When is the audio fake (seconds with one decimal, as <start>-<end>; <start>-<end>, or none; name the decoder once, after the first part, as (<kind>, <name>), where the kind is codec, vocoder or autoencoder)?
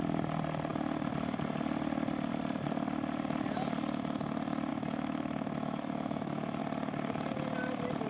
4.7-6.6 (autoencoder, DAC-VAE)